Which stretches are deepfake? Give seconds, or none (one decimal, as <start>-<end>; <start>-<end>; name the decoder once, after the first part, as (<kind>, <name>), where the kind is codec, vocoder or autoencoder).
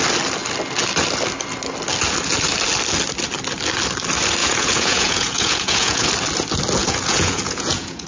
4.4-6.1 (vocoder, Vocos); 6.8-8.1